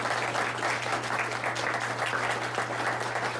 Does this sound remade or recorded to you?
recorded